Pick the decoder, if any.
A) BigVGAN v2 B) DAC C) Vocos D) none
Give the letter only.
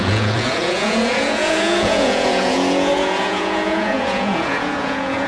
C